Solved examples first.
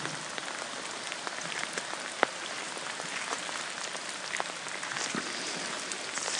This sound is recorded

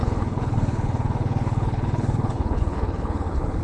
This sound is remade